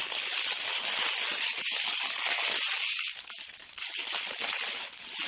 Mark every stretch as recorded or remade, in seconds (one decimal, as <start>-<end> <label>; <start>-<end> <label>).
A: 0.0-5.3 recorded